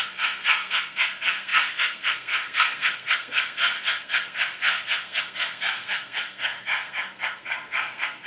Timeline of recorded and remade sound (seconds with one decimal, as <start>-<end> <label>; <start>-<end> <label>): 0.0-8.3 remade